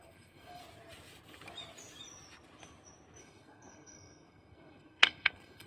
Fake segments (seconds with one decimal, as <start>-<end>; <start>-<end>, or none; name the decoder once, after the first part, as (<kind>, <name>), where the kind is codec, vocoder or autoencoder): 0.0-0.6 (codec, SNAC); 3.2-5.7